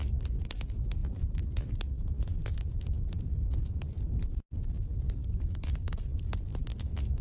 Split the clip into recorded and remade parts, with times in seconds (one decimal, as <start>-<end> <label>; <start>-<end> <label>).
0.0-7.2 recorded